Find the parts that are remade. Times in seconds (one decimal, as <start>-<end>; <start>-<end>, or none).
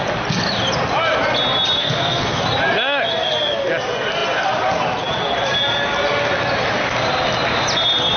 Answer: 1.8-2.4